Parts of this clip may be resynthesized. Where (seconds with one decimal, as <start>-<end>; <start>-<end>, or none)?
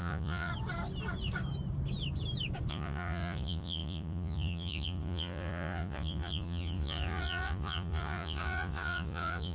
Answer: 0.0-0.5; 2.7-9.5